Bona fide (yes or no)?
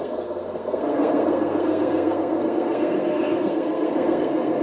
no